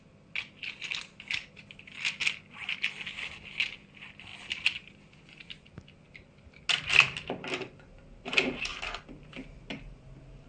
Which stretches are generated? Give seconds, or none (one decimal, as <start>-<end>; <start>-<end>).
none